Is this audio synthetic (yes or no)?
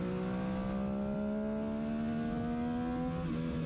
no